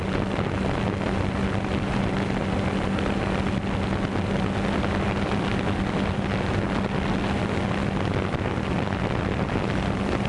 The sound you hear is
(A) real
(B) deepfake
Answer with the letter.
A